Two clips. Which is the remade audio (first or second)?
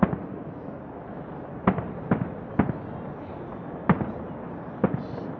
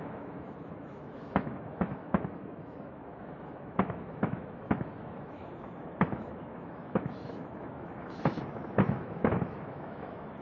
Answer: second